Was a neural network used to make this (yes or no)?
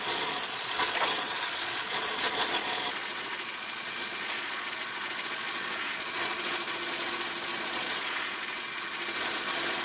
yes